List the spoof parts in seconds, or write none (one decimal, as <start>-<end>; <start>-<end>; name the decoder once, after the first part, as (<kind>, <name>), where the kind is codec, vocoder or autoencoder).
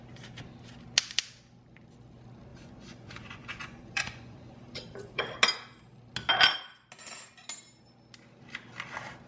2.5-5.2 (vocoder, Vocos)